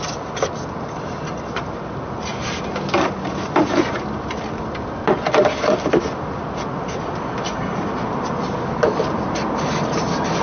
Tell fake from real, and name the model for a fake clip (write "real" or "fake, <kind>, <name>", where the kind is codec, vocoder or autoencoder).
real